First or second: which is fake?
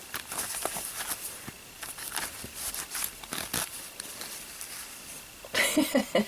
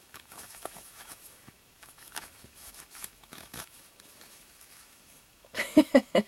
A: second